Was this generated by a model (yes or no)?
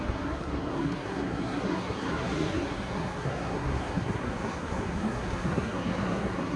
yes